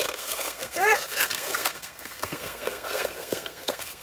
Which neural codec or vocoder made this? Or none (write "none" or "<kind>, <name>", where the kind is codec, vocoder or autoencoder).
codec, SNAC